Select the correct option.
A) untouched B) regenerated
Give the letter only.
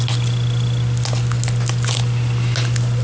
A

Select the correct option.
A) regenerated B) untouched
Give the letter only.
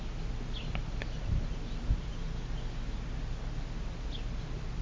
B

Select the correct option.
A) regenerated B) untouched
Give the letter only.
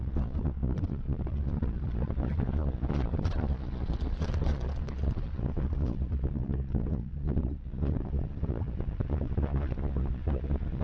A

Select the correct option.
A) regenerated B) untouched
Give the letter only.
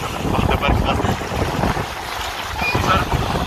B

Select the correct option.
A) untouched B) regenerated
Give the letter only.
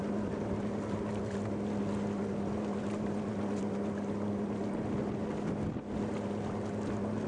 A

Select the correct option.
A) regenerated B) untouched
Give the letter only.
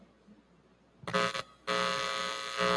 B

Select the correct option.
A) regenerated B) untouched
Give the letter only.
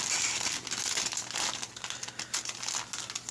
B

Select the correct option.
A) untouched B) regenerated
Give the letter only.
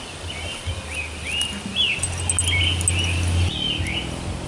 A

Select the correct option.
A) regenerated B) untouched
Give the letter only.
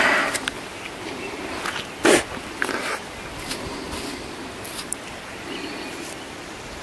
B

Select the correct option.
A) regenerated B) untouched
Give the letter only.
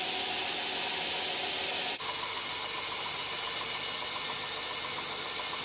B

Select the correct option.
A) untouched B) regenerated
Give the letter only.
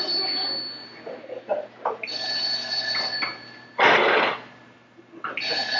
A